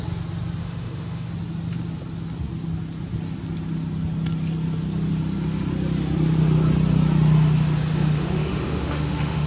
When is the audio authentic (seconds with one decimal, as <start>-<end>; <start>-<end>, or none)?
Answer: 0.0-0.6; 1.3-7.9